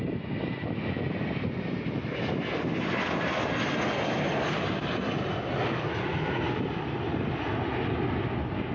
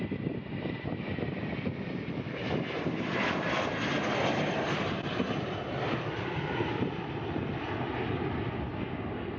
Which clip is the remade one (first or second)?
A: second